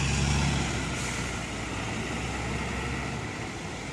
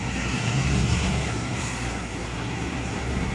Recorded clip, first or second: first